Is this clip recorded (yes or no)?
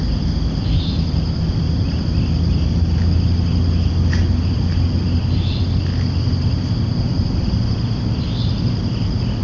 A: yes